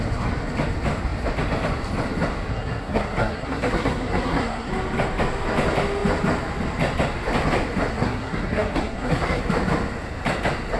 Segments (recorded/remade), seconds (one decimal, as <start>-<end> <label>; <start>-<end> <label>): 0.0-2.5 recorded; 2.5-4.7 remade; 4.7-7.9 recorded; 7.9-9.4 remade; 9.4-10.8 recorded